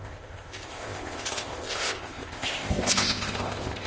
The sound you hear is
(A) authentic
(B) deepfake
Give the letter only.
B